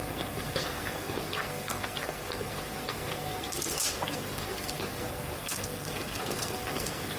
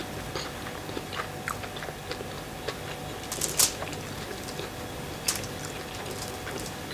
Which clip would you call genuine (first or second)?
second